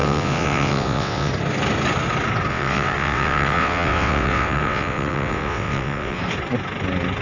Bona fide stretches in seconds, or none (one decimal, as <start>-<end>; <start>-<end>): 1.3-2.5; 6.2-7.2